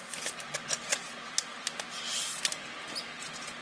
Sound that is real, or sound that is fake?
real